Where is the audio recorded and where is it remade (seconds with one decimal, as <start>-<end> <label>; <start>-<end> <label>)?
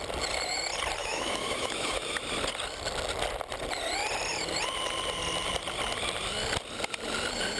0.0-1.0 recorded; 1.0-2.2 remade; 2.2-7.6 recorded